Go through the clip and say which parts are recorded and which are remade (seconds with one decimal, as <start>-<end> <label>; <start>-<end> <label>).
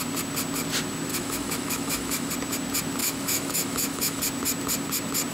0.0-1.1 recorded; 1.1-2.3 remade; 2.3-3.0 recorded; 3.0-4.2 remade; 4.2-5.3 recorded